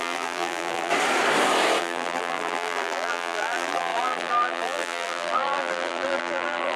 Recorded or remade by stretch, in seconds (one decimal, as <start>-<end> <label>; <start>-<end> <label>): 0.0-0.9 remade; 0.9-1.8 recorded; 1.8-6.8 remade